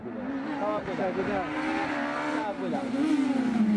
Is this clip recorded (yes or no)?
yes